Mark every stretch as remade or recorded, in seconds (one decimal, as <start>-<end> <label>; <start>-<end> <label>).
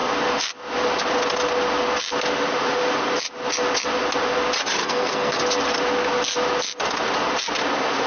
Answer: 0.0-4.8 recorded; 4.8-5.4 remade; 5.4-8.1 recorded